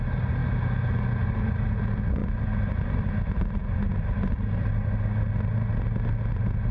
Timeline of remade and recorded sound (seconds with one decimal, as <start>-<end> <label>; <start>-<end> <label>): 0.0-6.7 recorded